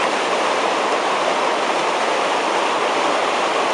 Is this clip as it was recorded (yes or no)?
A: yes